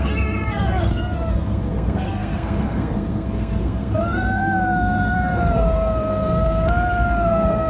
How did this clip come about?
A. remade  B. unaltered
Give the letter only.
A